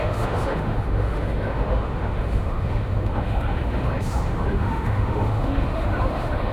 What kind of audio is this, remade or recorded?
remade